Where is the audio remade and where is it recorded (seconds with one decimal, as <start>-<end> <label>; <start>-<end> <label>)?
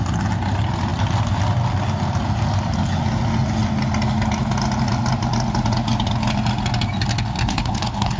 0.0-7.4 recorded; 7.4-8.2 remade